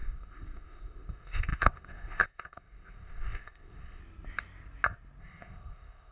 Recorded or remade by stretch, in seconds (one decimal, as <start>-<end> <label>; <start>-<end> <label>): 0.0-4.0 remade; 4.0-5.2 recorded; 5.2-6.1 remade